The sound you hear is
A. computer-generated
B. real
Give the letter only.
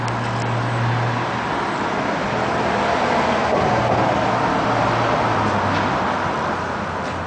B